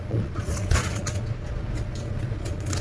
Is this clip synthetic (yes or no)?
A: yes